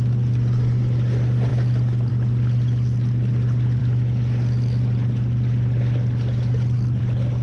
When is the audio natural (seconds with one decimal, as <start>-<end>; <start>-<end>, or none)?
0.0-7.4